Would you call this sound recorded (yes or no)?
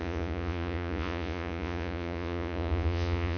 no